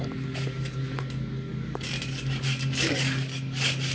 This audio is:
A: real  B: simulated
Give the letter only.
B